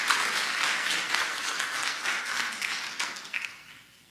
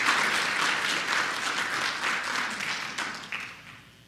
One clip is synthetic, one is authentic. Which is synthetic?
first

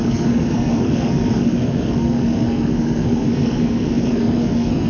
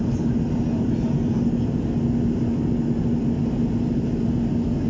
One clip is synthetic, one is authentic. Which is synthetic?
first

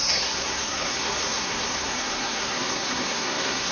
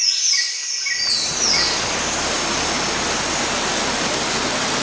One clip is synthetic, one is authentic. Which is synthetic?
first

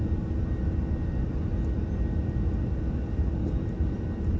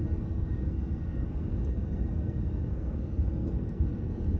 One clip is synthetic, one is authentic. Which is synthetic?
second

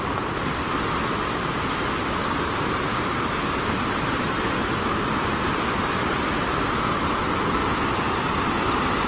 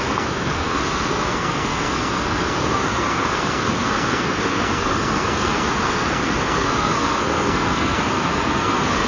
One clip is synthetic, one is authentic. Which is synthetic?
second